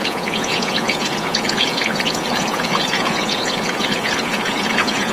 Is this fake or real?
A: fake